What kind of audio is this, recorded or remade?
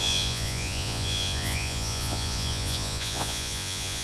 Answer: remade